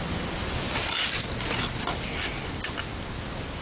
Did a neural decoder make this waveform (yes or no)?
no